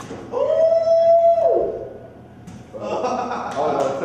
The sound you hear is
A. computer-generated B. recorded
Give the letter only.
A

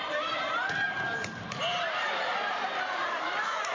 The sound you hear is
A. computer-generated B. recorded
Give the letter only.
A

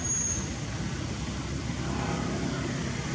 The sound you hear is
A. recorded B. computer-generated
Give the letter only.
A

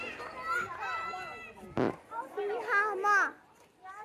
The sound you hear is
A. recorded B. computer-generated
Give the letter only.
A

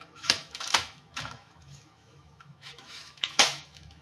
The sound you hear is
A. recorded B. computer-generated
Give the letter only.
B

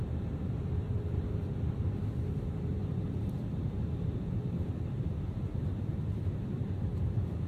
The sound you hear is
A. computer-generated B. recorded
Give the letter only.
A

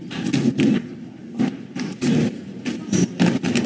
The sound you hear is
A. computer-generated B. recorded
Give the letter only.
B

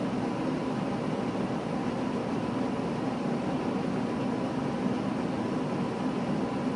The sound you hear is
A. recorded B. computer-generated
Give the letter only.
A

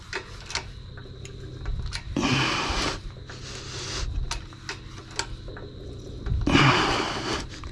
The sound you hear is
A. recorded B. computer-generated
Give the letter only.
A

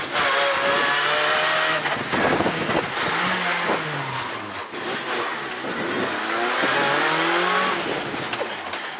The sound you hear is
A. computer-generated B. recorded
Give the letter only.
B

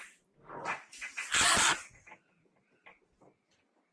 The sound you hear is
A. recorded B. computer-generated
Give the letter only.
A